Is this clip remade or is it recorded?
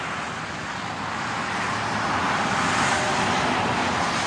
recorded